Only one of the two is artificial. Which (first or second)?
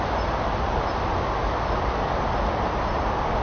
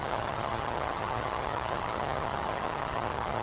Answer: second